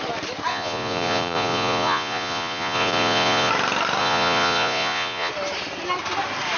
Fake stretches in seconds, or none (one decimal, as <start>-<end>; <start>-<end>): 0.5-3.5; 4.0-5.3